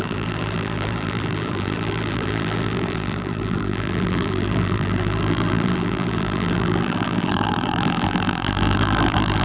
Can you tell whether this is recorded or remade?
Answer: remade